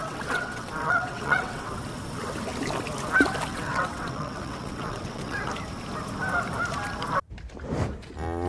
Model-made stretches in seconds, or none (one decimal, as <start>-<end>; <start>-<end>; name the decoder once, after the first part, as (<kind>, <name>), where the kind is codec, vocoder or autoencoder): 0.0-1.7 (vocoder, WaveNeXt); 3.5-5.5